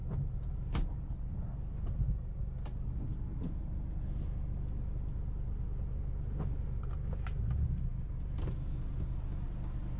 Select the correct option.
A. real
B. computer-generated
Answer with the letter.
A